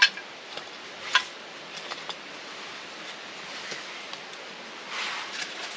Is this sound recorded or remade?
recorded